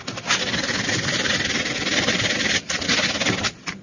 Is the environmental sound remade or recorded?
recorded